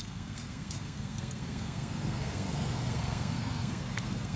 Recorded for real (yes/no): no